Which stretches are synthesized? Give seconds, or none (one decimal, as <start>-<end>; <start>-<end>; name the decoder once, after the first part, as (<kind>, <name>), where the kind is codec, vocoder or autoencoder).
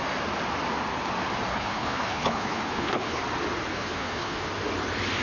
1.5-3.2 (codec, HILCodec); 3.7-4.4